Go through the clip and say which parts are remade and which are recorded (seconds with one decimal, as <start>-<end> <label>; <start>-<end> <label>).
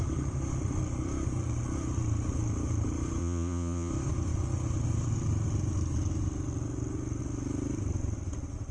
0.0-3.2 recorded; 3.2-3.9 remade; 3.9-8.7 recorded